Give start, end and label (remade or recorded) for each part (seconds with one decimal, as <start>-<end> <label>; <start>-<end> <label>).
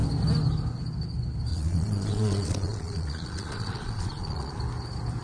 0.0-1.5 recorded; 1.5-4.6 remade; 4.6-5.2 recorded